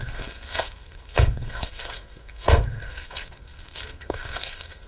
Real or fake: fake